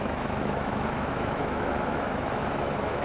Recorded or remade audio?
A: remade